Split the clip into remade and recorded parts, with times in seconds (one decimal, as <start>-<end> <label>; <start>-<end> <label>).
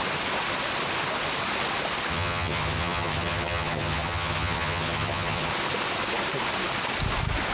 0.0-2.1 recorded; 2.1-5.5 remade; 5.5-7.5 recorded